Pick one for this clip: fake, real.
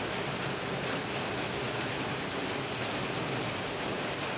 real